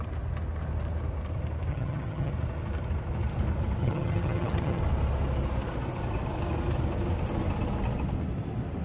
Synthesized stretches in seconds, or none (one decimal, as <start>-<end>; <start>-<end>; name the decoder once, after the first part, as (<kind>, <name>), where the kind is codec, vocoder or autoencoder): 1.7-2.3 (vocoder, HiFi-GAN); 3.8-4.8

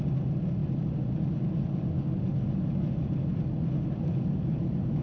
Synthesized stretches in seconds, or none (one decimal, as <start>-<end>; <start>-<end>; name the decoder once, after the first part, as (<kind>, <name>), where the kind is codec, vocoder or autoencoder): none

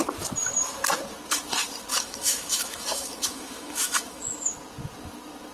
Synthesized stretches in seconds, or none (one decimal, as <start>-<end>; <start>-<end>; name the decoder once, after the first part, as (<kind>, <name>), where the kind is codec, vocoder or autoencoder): 1.9-4.5 (autoencoder, DAC-VAE)

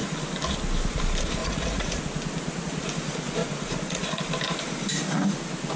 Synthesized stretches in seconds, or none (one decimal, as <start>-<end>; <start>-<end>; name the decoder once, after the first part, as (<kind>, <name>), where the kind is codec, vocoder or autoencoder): 1.4-2.0 (vocoder, Vocos); 3.4-4.2

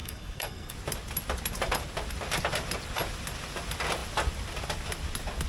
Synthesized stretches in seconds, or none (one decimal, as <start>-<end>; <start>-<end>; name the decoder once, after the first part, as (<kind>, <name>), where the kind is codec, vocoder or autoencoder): 0.0-0.7 (codec, SNAC)

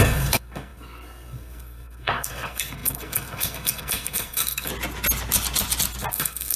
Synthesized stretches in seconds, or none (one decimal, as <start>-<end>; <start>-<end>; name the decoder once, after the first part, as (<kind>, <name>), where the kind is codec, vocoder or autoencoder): 0.0-4.7 (codec, SNAC); 6.1-6.6

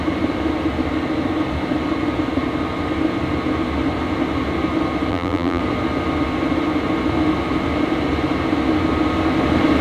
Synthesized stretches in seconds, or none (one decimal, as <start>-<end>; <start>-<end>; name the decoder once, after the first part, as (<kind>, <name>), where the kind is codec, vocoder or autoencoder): 5.1-5.6 (vocoder, BigVGAN v2)